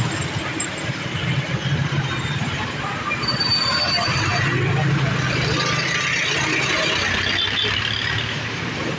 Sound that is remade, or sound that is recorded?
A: recorded